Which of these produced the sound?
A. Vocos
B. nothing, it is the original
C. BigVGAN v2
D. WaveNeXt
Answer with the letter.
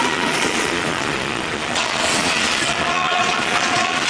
A